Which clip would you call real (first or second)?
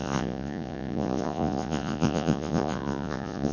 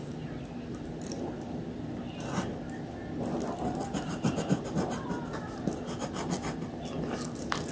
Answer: second